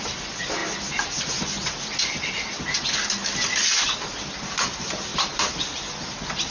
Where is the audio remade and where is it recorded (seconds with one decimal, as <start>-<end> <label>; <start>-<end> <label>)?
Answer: 0.0-5.1 recorded; 5.1-5.6 remade; 5.6-6.5 recorded